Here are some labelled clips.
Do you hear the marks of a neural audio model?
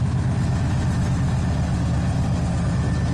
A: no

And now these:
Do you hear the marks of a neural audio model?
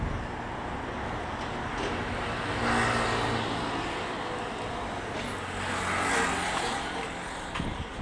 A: no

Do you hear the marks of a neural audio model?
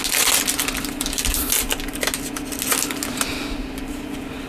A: no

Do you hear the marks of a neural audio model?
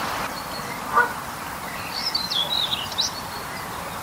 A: yes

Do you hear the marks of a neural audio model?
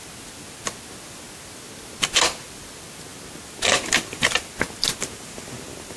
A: no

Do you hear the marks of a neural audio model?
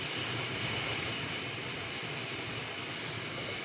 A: no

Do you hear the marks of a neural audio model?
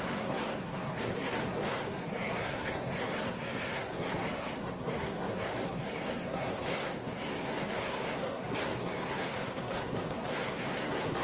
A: yes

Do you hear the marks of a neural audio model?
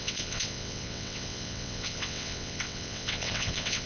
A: yes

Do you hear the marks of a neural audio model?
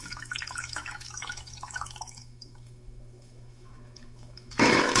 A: yes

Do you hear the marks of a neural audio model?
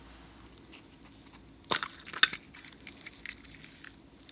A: no